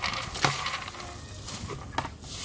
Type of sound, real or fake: real